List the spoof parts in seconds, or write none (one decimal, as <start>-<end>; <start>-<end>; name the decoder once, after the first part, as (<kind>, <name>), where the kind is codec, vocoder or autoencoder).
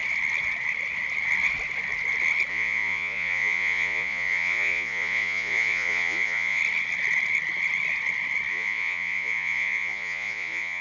2.5-6.6 (vocoder, Vocos); 8.5-10.8